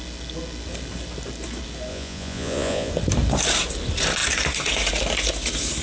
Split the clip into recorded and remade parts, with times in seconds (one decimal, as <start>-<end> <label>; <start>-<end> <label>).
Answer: 0.0-1.9 recorded; 1.9-2.9 remade; 2.9-5.8 recorded